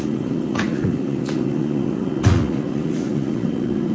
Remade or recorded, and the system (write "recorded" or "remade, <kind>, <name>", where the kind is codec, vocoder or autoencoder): remade, vocoder, Vocos